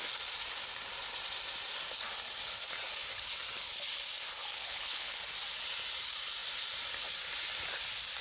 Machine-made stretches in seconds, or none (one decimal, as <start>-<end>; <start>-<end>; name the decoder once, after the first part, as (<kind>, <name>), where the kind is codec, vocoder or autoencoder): 4.5-5.2 (codec, HILCodec)